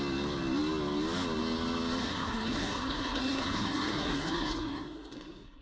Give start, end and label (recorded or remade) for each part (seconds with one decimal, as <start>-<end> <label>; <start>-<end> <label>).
0.0-2.0 recorded; 2.0-5.6 remade